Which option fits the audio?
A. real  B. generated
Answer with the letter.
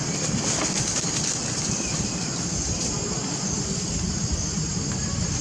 A